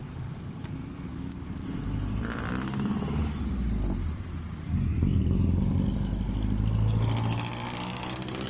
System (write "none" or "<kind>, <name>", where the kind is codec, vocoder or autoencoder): none